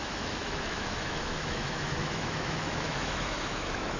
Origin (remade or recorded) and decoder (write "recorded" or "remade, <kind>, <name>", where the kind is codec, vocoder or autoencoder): remade, autoencoder, DAC-VAE